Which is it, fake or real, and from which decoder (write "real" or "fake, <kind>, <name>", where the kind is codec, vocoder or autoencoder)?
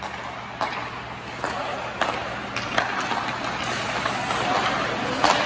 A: real